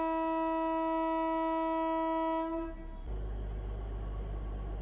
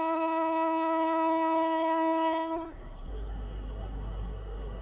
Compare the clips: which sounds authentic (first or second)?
first